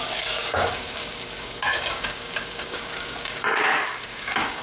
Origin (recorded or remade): remade